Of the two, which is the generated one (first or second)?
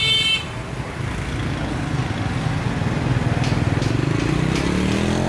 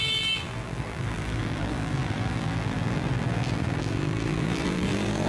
second